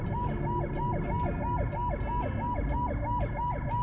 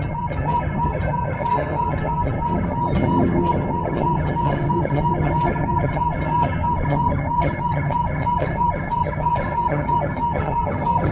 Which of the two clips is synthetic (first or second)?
second